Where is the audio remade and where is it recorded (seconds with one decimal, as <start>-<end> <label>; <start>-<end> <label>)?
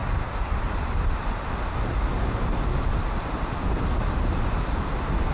0.0-5.3 recorded